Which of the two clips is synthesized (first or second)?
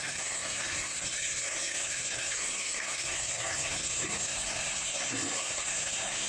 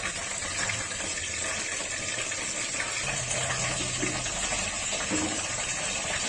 first